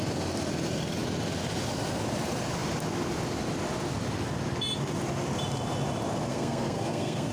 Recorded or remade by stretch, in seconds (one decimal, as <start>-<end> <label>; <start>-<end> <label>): 0.0-6.3 recorded; 6.3-7.3 remade